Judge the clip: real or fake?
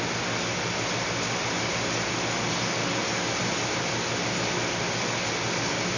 real